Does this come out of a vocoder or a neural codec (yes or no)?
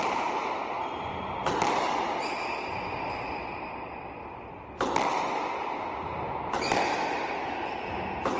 no